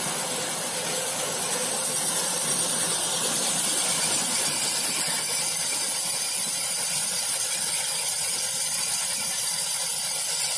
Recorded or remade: recorded